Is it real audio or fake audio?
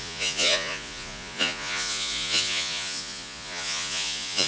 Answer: fake